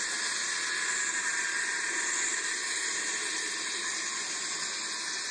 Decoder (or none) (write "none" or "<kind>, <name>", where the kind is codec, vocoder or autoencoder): none